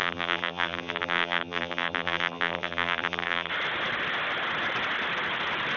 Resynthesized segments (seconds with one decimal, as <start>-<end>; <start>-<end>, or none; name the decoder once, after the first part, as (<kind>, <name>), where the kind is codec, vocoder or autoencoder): 0.0-3.5 (vocoder, BigVGAN v2)